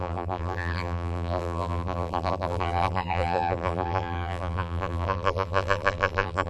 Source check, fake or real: fake